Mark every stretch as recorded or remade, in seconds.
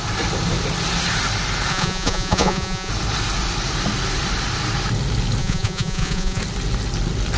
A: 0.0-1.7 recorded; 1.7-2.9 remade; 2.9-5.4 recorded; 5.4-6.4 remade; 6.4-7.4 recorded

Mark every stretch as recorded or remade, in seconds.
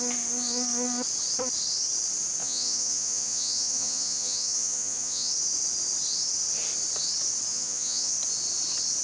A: 0.0-2.4 recorded; 2.4-5.3 remade; 5.3-7.5 recorded; 7.5-8.1 remade; 8.1-9.0 recorded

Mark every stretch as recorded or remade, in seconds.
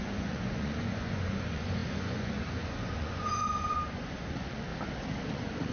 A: 0.0-4.7 remade; 4.7-5.3 recorded; 5.3-5.7 remade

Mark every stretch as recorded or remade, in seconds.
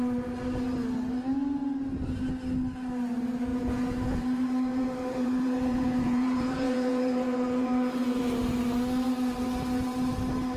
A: 0.0-3.5 recorded; 3.5-4.2 remade; 4.2-4.7 recorded; 4.7-8.2 remade; 8.2-9.4 recorded; 9.4-10.1 remade; 10.1-10.6 recorded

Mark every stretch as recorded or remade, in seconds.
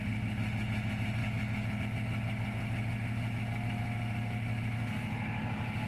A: 0.0-5.9 recorded